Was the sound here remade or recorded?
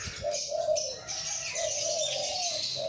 recorded